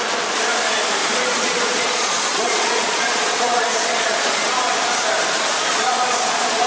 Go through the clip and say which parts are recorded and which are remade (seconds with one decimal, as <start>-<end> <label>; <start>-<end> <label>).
0.0-1.0 recorded; 1.0-4.5 remade; 4.5-5.5 recorded; 5.5-6.7 remade